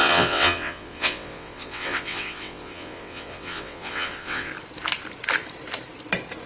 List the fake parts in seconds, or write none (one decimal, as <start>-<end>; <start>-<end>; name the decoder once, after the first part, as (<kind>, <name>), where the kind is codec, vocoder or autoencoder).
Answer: 0.0-4.5 (vocoder, WaveNeXt)

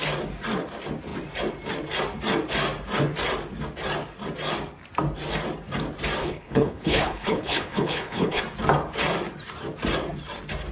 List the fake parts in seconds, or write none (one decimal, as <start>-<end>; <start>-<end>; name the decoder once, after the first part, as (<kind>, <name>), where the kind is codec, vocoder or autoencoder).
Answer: 6.2-8.4 (codec, HILCodec)

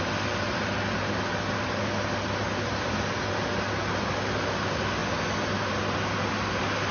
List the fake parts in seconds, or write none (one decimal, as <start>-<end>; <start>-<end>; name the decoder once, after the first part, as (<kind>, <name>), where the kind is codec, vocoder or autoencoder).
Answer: none

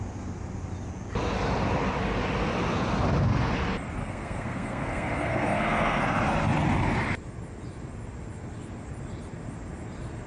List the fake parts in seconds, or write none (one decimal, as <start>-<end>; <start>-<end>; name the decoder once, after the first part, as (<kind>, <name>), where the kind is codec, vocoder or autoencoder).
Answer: 4.0-6.0 (codec, SNAC)